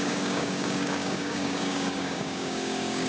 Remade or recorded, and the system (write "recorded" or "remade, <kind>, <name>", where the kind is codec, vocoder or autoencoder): remade, codec, DAC